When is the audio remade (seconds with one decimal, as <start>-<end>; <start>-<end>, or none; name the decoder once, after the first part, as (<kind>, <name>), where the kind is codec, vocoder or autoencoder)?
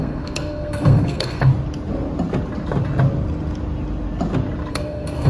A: 0.0-1.5 (codec, SNAC); 4.7-5.3